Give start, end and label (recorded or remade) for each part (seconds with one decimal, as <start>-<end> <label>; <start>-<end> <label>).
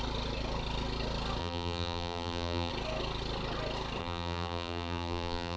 0.0-1.4 recorded; 1.4-2.7 remade; 2.7-4.0 recorded; 4.0-5.6 remade